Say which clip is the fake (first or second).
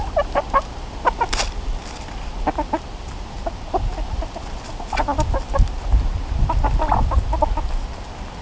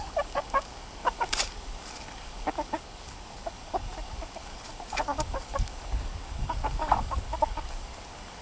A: second